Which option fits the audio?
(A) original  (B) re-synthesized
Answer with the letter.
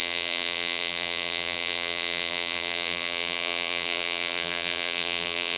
B